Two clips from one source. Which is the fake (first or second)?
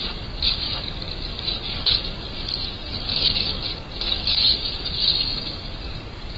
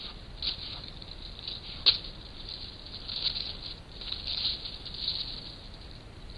first